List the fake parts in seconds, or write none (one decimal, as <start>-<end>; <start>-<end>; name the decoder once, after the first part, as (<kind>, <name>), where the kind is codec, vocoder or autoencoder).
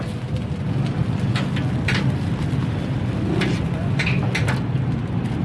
none